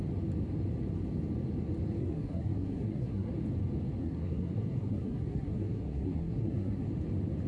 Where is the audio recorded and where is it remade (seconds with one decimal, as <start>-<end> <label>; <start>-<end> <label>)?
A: 0.0-2.0 recorded; 2.0-3.3 remade; 3.3-4.0 recorded; 4.0-6.9 remade; 6.9-7.5 recorded